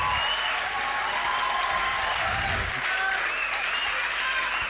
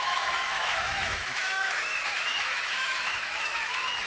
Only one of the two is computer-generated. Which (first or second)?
second